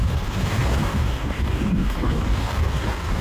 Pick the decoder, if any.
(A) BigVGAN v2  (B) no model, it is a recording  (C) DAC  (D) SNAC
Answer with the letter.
C